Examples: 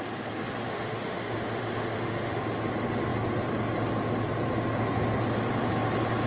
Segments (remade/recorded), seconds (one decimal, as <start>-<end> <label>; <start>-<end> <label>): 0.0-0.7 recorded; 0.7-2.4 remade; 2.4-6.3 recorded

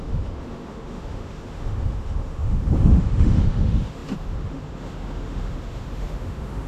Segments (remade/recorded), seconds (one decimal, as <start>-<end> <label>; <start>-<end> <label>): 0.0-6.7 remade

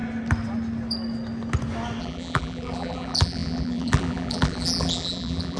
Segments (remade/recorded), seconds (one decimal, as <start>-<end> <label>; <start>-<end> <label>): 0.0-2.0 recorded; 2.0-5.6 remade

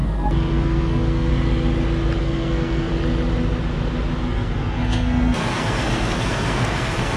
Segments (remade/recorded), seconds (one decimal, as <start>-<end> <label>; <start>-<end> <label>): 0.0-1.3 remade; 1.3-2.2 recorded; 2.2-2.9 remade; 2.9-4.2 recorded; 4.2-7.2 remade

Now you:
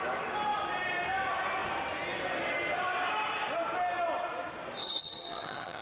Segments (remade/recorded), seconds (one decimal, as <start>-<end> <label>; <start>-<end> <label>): 0.0-4.8 recorded; 4.8-5.8 remade

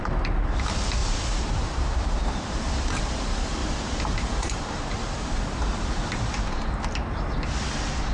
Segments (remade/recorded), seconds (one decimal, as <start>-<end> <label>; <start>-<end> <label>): 0.0-1.0 recorded; 1.0-3.0 remade; 3.0-3.6 recorded; 3.6-6.7 remade; 6.7-8.1 recorded

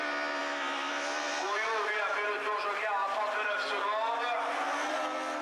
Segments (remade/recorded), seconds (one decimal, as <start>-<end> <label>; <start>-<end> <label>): 0.0-5.4 recorded